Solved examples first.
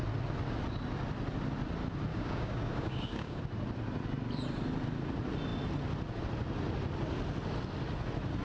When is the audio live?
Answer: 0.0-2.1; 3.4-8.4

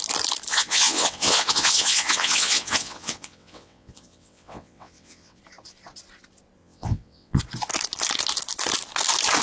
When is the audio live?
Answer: 0.0-0.5; 5.4-6.6; 7.4-9.4

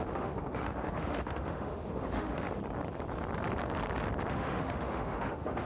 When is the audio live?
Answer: 2.6-4.3

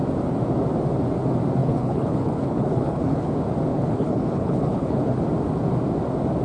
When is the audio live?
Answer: 0.0-1.6; 3.3-3.7; 5.2-6.4

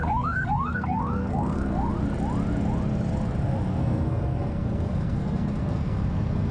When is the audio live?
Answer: 1.9-3.8